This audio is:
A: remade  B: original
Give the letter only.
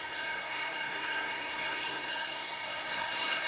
A